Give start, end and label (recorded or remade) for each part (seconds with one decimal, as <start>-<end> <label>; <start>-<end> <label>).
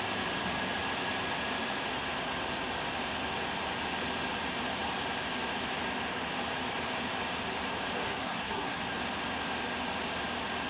0.0-8.0 recorded; 8.0-8.8 remade; 8.8-10.7 recorded